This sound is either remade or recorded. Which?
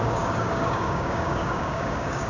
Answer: remade